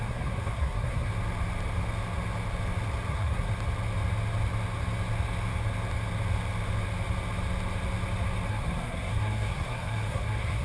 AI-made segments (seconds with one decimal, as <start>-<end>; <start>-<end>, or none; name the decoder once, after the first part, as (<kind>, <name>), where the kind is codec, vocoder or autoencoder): 0.0-1.1 (codec, SNAC); 3.1-3.5; 8.5-10.6